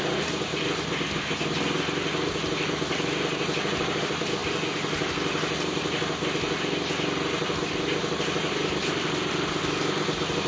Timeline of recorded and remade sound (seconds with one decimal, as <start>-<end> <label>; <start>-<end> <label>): 0.0-10.5 recorded